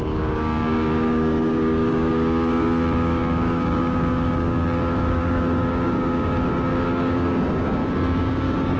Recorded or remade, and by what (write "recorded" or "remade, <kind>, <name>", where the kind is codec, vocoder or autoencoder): remade, codec, DAC